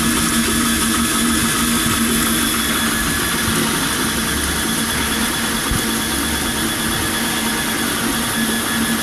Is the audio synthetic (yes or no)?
no